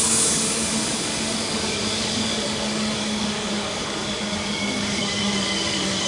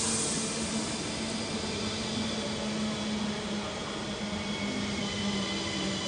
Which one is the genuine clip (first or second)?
second